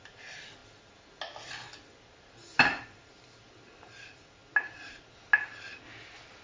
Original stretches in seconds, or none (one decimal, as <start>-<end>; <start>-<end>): 0.0-6.4